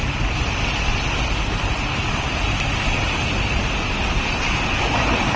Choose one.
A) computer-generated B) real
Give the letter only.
B